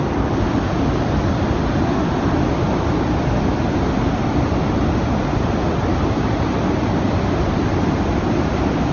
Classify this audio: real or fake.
real